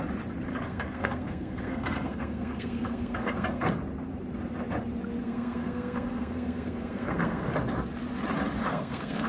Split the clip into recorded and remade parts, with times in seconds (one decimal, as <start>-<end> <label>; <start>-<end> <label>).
0.0-0.5 recorded; 0.5-3.7 remade; 3.7-5.2 recorded; 5.2-7.5 remade; 7.5-8.7 recorded; 8.7-9.3 remade